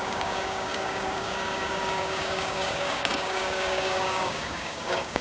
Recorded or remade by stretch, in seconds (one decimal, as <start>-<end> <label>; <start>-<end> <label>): 0.0-5.2 remade